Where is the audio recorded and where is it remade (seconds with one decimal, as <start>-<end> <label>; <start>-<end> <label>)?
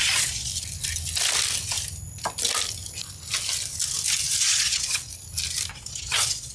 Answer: 0.0-0.5 remade; 0.5-4.4 recorded; 4.4-5.1 remade; 5.1-5.7 recorded; 5.7-6.5 remade